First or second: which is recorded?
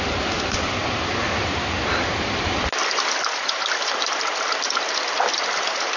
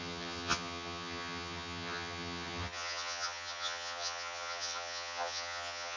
first